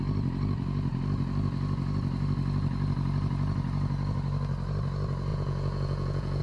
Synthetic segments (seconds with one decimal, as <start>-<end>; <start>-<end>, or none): 5.3-6.4